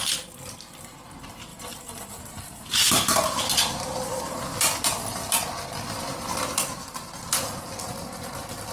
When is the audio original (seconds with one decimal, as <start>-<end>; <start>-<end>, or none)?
0.0-1.5; 4.2-8.7